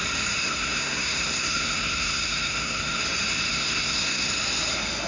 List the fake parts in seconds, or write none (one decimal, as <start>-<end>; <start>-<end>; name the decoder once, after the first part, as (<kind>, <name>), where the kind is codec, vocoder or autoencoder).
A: 0.4-3.0 (codec, SNAC); 3.5-4.3